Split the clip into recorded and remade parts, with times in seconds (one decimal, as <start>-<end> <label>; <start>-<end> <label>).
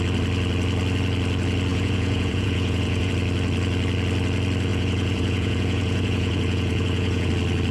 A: 0.0-1.7 recorded; 1.7-3.1 remade; 3.1-4.7 recorded; 4.7-7.3 remade; 7.3-7.7 recorded